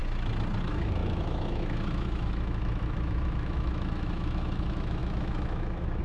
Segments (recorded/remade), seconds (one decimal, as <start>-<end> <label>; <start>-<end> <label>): 0.0-0.6 recorded; 0.6-6.0 remade